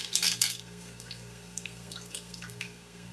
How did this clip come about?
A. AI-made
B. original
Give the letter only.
A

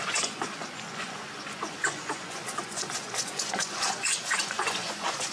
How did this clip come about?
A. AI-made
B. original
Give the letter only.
A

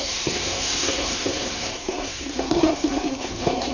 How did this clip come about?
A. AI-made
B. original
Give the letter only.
A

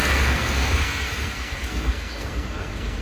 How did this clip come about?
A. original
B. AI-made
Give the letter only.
B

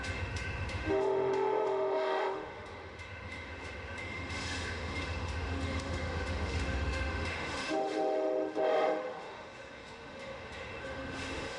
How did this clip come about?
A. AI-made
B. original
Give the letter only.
A